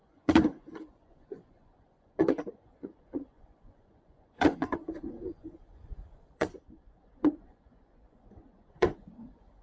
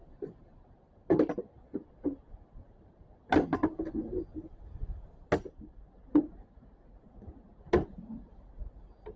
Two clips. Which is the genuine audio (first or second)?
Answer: second